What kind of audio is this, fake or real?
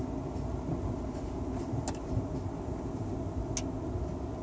real